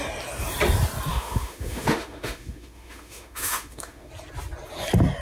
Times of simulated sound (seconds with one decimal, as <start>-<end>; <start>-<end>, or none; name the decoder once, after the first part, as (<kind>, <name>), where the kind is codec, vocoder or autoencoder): 1.1-4.1 (autoencoder, DAC-VAE)